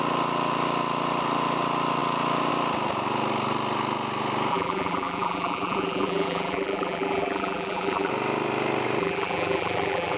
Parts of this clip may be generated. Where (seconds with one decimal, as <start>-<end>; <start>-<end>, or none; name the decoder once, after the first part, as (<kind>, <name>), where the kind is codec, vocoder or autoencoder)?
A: 4.5-8.1 (vocoder, BigVGAN v2); 9.0-10.2